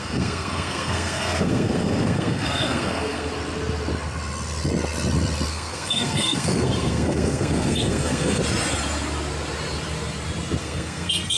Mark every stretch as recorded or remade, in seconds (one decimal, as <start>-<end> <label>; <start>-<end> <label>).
0.0-3.3 remade; 3.3-5.5 recorded; 5.5-8.4 remade; 8.4-10.6 recorded; 10.6-11.4 remade